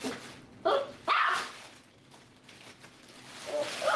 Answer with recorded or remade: recorded